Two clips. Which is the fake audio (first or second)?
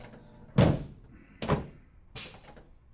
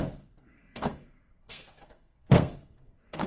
second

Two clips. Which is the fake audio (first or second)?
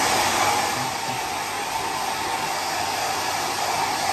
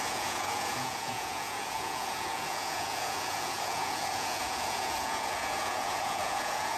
second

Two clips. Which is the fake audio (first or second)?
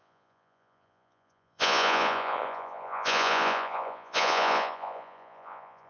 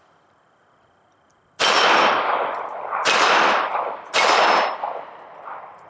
first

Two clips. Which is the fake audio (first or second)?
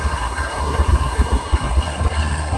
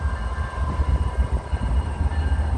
first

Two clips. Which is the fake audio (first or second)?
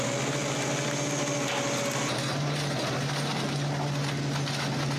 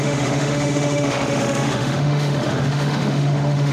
second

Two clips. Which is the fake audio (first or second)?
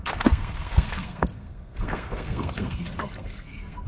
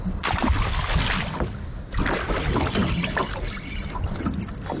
first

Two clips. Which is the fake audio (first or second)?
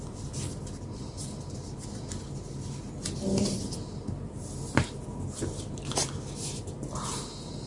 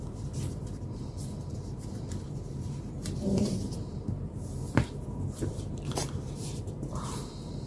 second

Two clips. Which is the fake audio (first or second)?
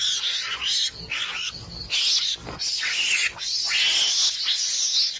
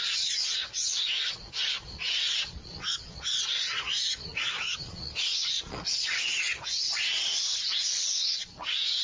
second